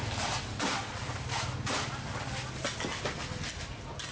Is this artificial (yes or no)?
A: no